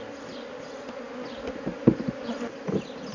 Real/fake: real